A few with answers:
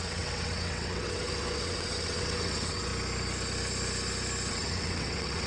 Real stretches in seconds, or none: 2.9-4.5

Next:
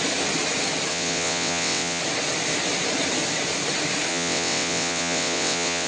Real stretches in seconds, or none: 0.0-0.9; 2.0-4.1

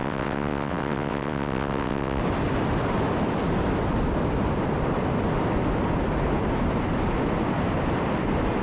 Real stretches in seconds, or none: 2.2-8.6

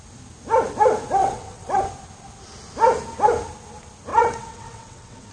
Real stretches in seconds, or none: 0.0-1.2; 1.8-4.1

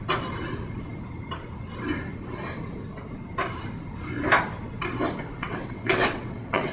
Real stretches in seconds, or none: 0.0-5.4